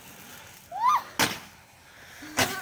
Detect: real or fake real